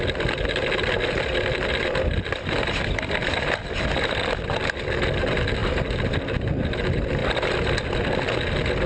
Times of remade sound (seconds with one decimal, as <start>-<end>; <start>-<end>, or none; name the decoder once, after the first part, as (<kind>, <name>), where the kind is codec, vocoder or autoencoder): none